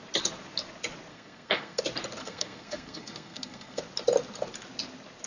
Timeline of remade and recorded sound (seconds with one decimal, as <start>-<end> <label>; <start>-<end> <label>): 0.0-1.1 recorded; 1.1-1.8 remade; 1.8-2.2 recorded; 2.2-3.8 remade; 3.8-5.3 recorded